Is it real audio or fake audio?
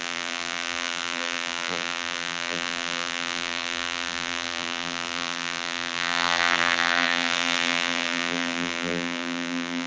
fake